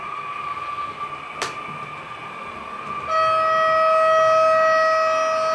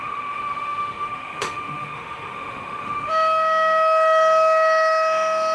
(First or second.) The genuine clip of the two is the first